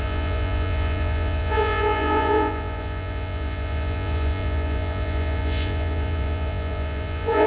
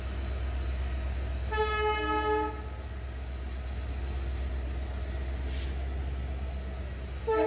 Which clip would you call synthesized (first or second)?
first